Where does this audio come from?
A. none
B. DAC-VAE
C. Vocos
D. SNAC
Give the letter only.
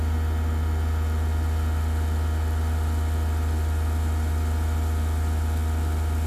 A